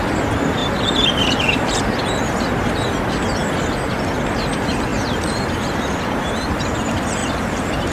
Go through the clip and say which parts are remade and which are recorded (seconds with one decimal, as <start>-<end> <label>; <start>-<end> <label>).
0.0-0.6 recorded; 0.6-1.8 remade; 1.8-7.2 recorded; 7.2-7.9 remade